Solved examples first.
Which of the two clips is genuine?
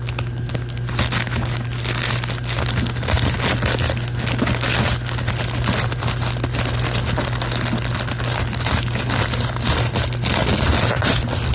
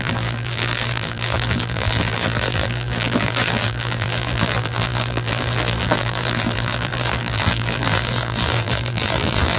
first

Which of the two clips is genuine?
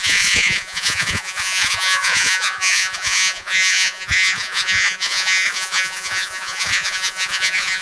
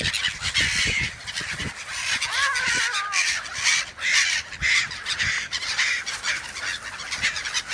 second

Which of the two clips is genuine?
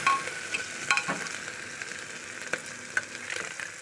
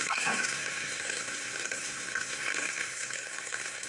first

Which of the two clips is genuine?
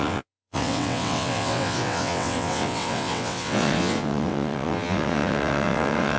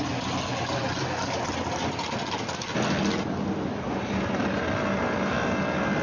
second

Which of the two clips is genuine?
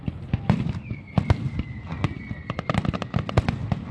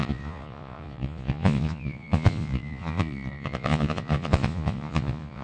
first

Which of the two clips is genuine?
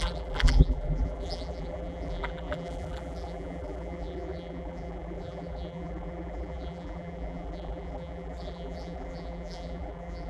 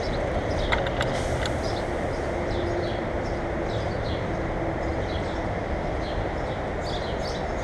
second